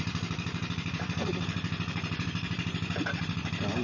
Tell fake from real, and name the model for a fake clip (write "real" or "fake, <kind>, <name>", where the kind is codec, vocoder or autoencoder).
fake, vocoder, BigVGAN v2